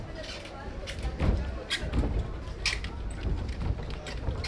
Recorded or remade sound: recorded